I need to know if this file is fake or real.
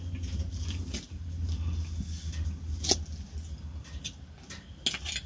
real